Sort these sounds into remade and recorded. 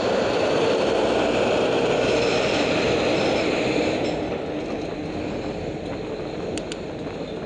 recorded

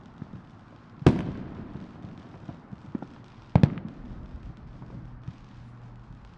recorded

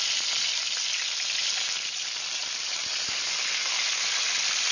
recorded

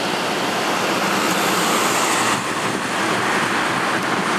recorded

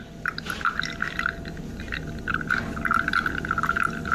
recorded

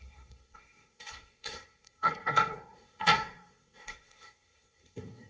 remade